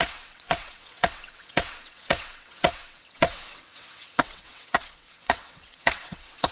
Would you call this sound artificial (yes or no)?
yes